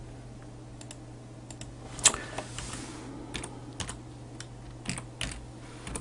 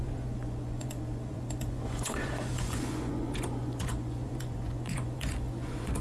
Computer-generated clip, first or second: second